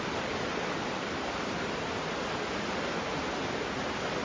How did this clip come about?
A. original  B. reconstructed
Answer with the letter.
A